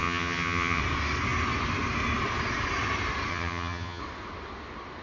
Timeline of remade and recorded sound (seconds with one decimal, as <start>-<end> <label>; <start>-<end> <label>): 0.0-0.8 remade; 0.8-3.3 recorded; 3.3-4.0 remade; 4.0-5.0 recorded